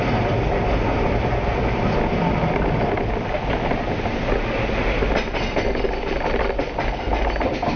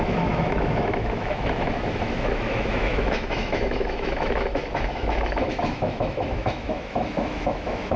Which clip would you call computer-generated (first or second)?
second